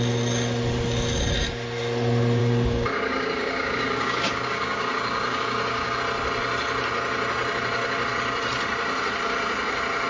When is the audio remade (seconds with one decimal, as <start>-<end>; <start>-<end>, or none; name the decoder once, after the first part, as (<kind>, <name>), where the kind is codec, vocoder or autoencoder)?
2.4-6.0 (codec, DAC)